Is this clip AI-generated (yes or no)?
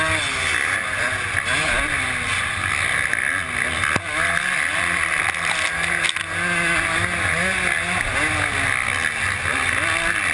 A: no